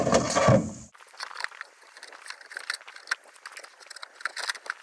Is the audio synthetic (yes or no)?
no